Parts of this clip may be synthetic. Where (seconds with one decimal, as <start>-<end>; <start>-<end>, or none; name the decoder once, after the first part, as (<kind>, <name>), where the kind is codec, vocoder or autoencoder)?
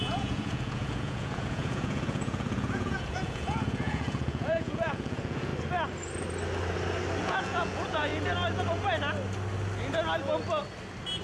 0.0-5.5 (vocoder, Vocos); 7.2-8.1